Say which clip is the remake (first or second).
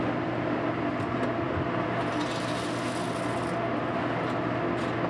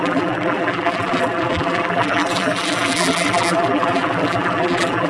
second